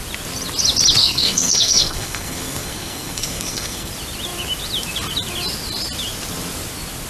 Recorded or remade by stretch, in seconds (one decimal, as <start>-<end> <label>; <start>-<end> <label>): 0.0-1.0 recorded; 1.0-3.9 remade; 3.9-7.1 recorded